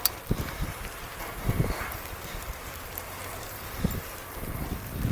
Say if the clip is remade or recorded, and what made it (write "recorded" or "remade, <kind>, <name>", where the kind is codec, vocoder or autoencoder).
recorded